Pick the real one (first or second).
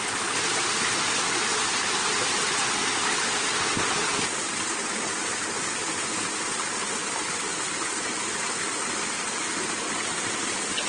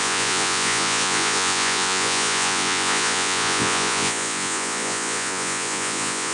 first